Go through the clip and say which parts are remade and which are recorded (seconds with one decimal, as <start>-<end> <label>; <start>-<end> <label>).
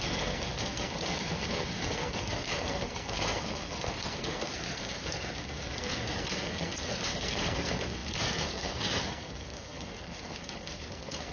0.0-11.3 remade